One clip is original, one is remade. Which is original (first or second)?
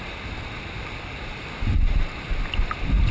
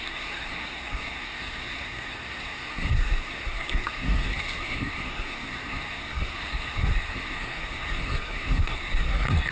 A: first